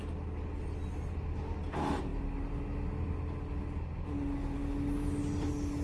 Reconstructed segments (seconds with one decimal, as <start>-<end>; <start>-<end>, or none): none